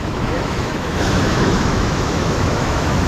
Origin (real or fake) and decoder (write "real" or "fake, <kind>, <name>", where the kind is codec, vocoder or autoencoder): fake, autoencoder, DAC-VAE